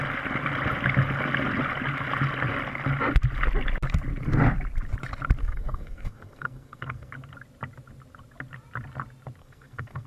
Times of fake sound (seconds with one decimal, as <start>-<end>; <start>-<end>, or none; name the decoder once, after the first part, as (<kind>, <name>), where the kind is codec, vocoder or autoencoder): 5.4-7.1 (codec, SNAC); 9.4-10.1